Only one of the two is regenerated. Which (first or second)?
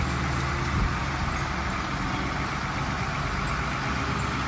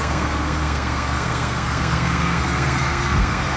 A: second